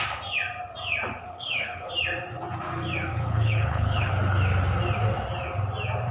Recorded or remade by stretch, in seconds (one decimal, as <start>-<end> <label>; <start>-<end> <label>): 0.0-1.2 recorded; 1.2-1.9 remade; 1.9-3.1 recorded; 3.1-4.1 remade; 4.1-6.1 recorded